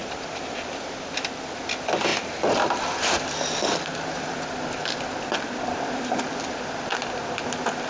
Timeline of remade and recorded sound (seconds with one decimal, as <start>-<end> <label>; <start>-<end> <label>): 0.0-0.6 remade; 0.6-2.1 recorded; 2.1-6.2 remade; 6.2-7.9 recorded